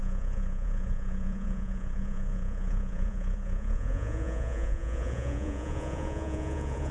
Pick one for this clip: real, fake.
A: fake